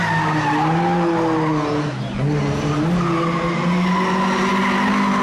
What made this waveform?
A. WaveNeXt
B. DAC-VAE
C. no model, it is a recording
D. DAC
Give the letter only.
C